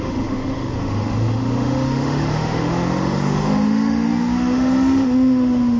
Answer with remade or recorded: remade